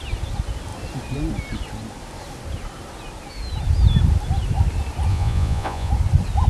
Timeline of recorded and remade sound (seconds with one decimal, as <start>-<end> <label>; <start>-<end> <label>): 0.0-5.1 recorded; 5.1-5.9 remade; 5.9-6.5 recorded